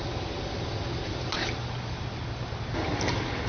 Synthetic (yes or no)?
no